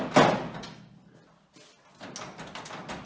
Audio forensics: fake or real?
real